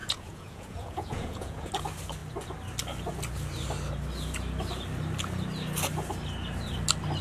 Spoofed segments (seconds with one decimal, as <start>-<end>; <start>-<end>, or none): 0.0-1.7